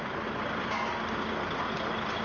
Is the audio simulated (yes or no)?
no